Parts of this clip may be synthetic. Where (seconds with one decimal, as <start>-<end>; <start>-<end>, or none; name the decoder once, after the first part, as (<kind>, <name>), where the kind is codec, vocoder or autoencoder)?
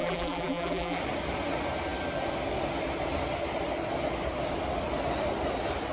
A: 0.0-1.0 (vocoder, BigVGAN v2)